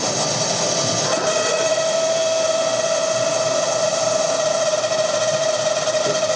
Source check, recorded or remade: remade